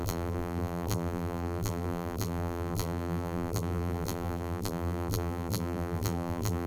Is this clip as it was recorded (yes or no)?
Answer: no